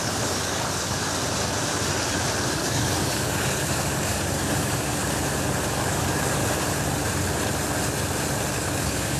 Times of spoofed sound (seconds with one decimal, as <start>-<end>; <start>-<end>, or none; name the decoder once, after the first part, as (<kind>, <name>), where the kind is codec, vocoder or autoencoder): 0.0-1.1 (codec, DAC); 2.5-5.0; 5.7-6.4; 8.5-9.2

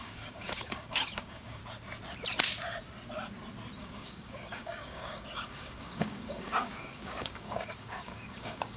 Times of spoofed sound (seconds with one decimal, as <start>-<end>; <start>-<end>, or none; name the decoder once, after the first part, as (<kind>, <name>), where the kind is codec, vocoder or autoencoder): 0.0-1.6 (codec, DAC); 3.8-8.8

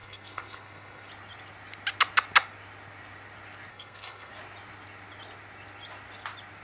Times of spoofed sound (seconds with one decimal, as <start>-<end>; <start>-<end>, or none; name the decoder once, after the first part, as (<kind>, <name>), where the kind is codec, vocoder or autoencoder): 0.0-1.1 (codec, SNAC); 3.7-4.3

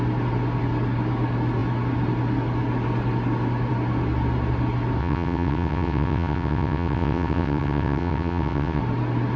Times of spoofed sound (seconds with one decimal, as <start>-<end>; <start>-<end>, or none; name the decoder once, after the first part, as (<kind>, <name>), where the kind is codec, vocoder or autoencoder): 5.0-8.8 (vocoder, WaveNeXt)

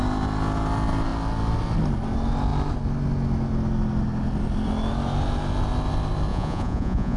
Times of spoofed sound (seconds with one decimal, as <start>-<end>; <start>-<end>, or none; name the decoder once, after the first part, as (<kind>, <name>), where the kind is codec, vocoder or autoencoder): 6.3-7.2 (vocoder, Vocos)